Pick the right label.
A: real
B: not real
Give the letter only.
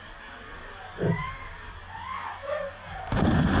A